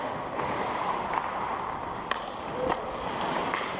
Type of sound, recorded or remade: recorded